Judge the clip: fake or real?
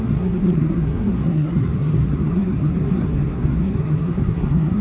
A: fake